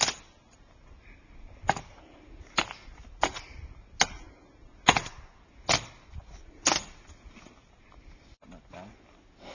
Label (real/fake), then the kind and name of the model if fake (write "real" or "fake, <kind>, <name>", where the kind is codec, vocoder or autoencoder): real